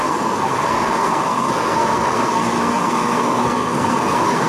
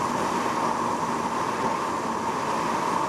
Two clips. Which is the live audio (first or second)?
second